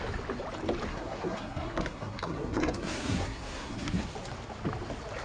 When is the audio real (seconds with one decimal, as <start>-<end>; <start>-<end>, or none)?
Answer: 0.0-0.9; 4.0-5.2